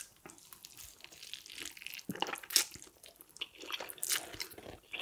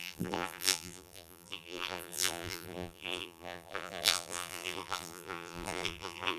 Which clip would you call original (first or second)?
first